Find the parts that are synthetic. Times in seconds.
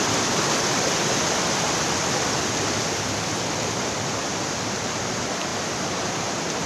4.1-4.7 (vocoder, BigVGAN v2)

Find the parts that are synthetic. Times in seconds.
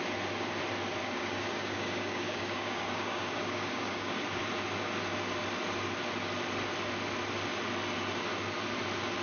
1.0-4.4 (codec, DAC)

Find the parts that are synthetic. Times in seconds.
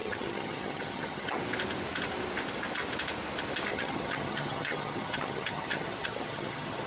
0.0-1.4 (vocoder, HiFi-GAN); 3.7-6.9